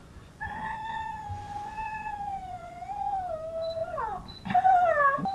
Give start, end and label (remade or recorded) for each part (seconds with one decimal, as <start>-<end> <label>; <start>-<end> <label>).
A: 0.0-3.2 remade; 3.2-3.8 recorded; 3.8-4.7 remade; 4.7-5.3 recorded